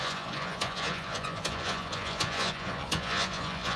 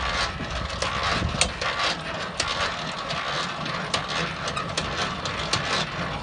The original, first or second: second